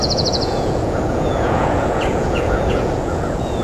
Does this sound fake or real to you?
fake